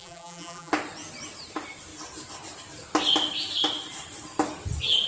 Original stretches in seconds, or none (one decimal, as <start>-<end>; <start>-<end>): 0.7-5.1